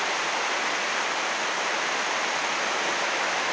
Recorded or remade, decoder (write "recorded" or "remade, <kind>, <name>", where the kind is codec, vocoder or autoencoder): recorded